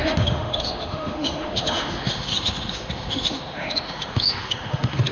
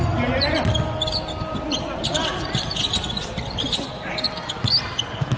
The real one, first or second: second